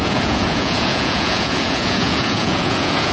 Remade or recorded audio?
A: remade